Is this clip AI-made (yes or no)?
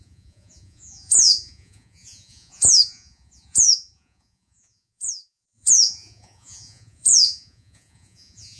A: yes